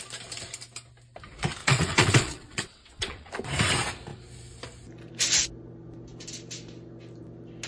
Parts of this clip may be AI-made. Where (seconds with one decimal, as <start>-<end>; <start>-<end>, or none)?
1.6-3.3